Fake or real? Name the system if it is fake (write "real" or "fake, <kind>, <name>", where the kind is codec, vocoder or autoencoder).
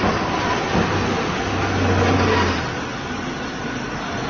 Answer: real